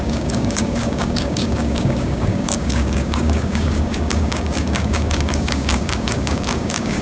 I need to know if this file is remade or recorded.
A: remade